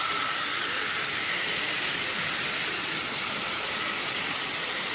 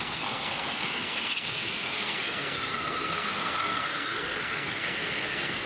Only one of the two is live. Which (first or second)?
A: first